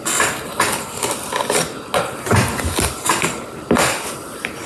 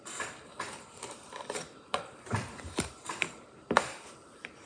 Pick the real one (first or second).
first